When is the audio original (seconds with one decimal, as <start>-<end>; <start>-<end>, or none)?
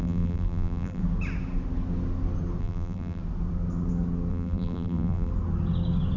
1.0-2.6; 3.2-4.3; 5.3-6.2